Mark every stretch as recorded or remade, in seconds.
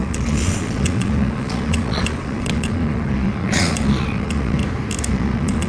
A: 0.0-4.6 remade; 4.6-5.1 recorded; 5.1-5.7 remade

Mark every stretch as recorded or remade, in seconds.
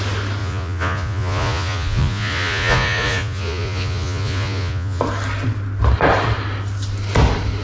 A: 0.0-0.4 recorded; 0.4-5.0 remade; 5.0-7.6 recorded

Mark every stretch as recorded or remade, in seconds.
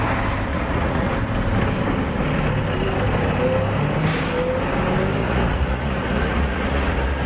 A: 0.0-0.5 recorded; 0.5-1.1 remade; 1.1-5.2 recorded; 5.2-7.3 remade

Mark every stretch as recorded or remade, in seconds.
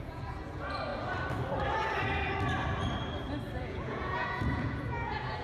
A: 0.0-0.9 remade; 0.9-3.6 recorded; 3.6-5.4 remade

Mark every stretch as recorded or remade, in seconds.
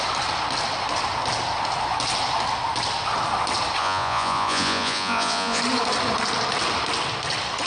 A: 0.0-3.8 recorded; 3.8-5.6 remade; 5.6-7.7 recorded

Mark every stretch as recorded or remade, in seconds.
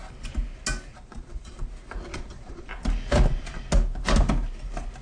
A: 0.0-0.9 recorded; 0.9-1.7 remade; 1.7-2.1 recorded; 2.1-2.7 remade; 2.7-5.0 recorded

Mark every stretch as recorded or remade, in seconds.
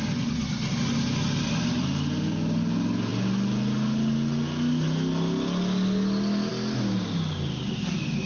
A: 0.0-8.3 recorded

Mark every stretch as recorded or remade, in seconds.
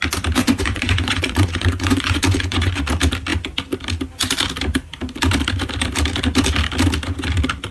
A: 0.0-0.4 recorded; 0.4-2.8 remade; 2.8-7.7 recorded